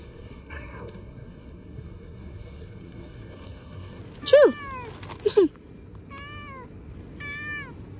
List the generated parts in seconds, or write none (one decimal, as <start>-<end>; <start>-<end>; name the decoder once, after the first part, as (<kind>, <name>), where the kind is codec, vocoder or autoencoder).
0.0-4.0 (codec, SNAC)